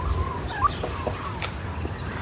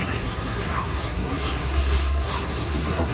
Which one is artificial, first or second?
second